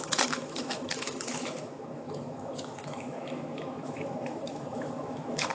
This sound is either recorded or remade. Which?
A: remade